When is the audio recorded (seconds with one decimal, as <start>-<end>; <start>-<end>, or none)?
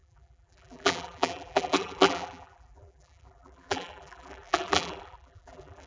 none